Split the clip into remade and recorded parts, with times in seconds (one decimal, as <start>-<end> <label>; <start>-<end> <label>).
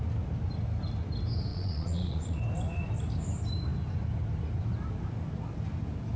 0.0-1.5 recorded; 1.5-2.4 remade; 2.4-6.2 recorded